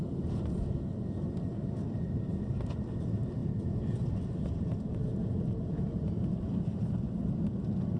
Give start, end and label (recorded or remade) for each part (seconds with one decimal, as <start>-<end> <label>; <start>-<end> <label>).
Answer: 0.0-8.0 recorded